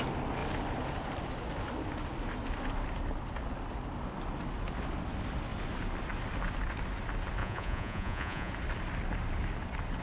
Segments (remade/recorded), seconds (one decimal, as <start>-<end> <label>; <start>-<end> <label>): 0.0-7.4 recorded; 7.4-8.5 remade; 8.5-10.0 recorded